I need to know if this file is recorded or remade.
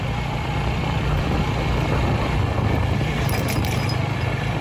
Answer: remade